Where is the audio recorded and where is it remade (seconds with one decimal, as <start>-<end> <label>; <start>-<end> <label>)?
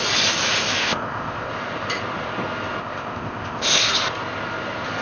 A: 0.0-0.8 recorded; 0.8-1.5 remade; 1.5-2.8 recorded; 2.8-3.9 remade; 3.9-5.0 recorded